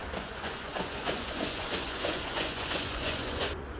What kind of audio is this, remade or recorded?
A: remade